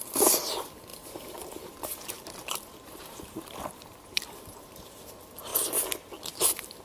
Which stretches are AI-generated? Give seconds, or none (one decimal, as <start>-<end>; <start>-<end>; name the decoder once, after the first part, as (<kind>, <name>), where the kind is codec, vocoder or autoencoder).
0.9-5.0 (vocoder, BigVGAN v2)